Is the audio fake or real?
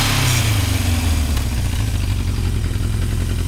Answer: real